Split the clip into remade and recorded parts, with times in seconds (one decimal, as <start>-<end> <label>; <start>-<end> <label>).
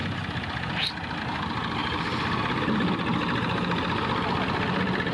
0.0-5.1 recorded